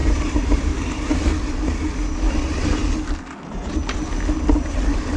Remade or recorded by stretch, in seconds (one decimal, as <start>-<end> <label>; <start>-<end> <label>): 0.0-1.0 remade; 1.0-5.2 recorded